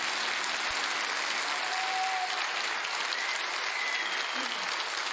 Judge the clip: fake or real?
real